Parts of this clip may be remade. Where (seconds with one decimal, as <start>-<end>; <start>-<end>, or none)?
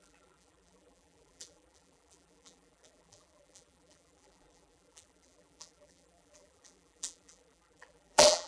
0.0-8.5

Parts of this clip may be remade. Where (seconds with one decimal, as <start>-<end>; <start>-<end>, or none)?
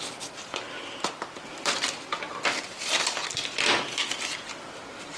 1.5-4.3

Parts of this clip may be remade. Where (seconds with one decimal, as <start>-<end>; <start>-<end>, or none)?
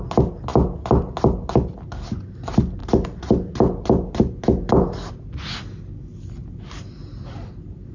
none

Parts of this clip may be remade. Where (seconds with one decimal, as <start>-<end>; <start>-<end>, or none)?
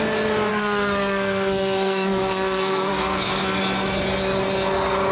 0.5-3.6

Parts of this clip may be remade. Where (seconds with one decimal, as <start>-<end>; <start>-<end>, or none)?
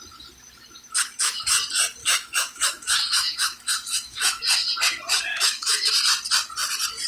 2.0-4.4; 5.3-5.9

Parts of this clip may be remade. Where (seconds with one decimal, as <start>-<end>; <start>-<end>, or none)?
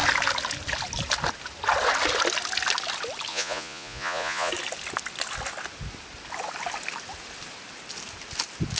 3.3-4.5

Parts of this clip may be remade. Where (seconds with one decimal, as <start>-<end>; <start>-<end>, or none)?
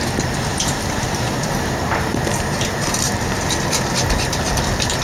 0.5-3.5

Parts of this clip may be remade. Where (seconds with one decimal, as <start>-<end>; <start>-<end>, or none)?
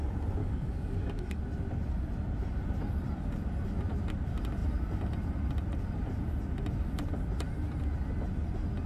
0.4-1.4